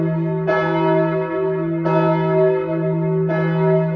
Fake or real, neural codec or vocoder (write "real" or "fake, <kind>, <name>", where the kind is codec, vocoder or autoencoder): real